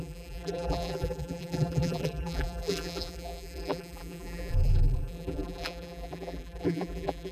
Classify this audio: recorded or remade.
remade